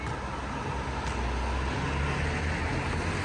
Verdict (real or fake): real